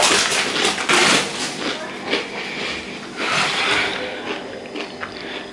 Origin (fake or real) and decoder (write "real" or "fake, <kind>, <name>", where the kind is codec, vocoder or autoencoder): real